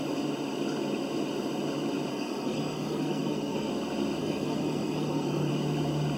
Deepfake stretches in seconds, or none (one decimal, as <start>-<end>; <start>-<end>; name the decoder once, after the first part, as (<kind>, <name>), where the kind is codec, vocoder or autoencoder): 2.1-3.7 (codec, SNAC); 4.2-5.5